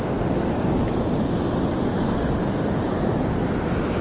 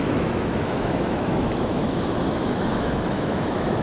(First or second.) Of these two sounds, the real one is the first